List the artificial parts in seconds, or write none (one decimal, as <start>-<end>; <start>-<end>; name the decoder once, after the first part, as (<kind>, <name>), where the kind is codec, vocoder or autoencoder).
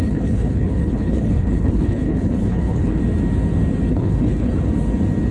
0.0-3.0 (codec, HILCodec); 3.9-4.5